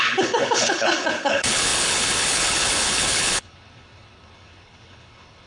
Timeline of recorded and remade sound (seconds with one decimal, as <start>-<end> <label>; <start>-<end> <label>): 0.0-5.5 remade

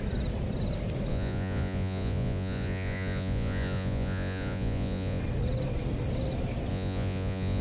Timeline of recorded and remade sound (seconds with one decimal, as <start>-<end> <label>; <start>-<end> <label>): 0.0-1.1 recorded; 1.1-5.2 remade; 5.2-6.7 recorded; 6.7-7.6 remade

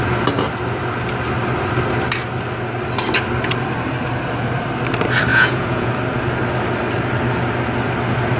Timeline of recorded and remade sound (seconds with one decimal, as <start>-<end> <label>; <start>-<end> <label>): 0.0-5.3 recorded; 5.3-5.9 remade; 5.9-8.4 recorded

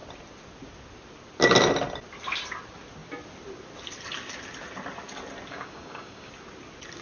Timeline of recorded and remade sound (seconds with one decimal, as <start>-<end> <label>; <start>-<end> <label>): 0.0-5.5 recorded; 5.5-6.3 remade; 6.3-7.0 recorded